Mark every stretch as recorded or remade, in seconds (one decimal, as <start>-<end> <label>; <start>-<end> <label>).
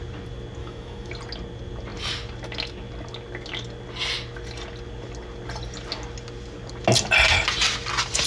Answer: 0.0-0.6 recorded; 0.6-1.1 remade; 1.1-8.3 recorded